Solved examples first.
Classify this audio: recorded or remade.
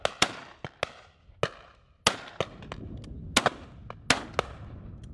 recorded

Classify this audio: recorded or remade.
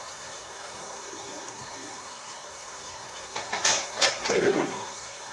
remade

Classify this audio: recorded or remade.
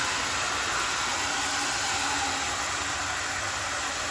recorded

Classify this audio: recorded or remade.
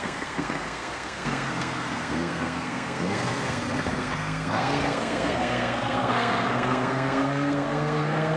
remade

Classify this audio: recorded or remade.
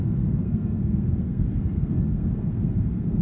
remade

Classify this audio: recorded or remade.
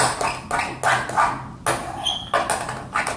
recorded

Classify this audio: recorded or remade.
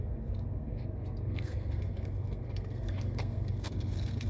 remade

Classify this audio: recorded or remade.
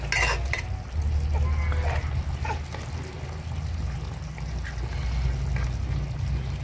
recorded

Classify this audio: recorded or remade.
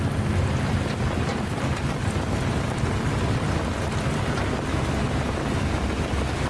recorded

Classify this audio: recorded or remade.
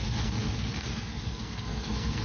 remade